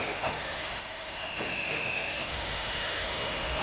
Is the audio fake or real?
fake